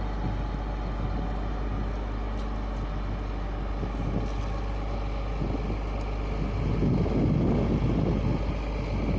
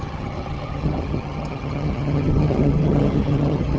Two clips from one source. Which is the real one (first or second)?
first